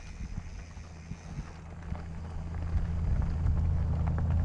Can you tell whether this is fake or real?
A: real